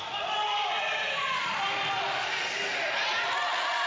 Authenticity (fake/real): real